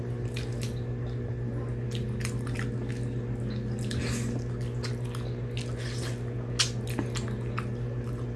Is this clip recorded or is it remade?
recorded